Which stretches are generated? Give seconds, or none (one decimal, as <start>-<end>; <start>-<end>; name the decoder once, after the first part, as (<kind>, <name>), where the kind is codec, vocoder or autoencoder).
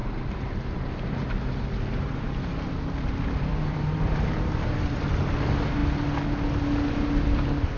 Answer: 0.0-2.7 (vocoder, BigVGAN v2); 3.5-5.0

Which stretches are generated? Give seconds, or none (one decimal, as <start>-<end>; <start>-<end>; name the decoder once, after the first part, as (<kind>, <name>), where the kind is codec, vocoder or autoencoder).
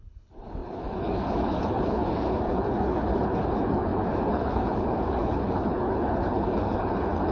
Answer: 0.0-7.3 (codec, HILCodec)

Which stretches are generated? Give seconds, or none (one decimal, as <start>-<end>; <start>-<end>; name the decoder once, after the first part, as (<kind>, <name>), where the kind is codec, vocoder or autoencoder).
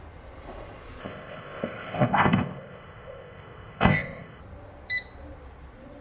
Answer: 1.0-4.4 (codec, ZipCodec)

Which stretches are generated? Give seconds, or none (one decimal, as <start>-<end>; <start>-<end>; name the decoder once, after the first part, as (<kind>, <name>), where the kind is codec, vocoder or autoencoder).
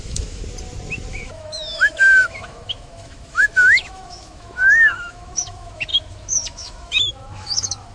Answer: 0.0-0.4 (autoencoder, DAC-VAE); 1.1-7.9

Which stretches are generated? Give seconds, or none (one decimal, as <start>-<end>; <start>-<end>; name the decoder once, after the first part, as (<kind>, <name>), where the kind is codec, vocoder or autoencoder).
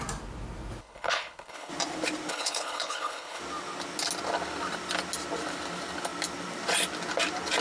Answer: 0.8-1.7 (codec, HILCodec); 2.3-3.4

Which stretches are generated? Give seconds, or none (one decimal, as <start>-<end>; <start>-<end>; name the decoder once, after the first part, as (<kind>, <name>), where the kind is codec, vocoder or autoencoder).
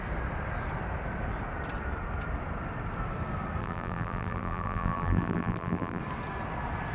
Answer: 3.6-6.0 (vocoder, BigVGAN v2)